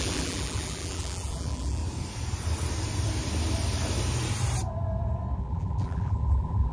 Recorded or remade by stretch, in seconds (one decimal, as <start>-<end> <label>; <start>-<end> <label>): 0.0-1.8 remade; 1.8-5.4 recorded; 5.4-6.7 remade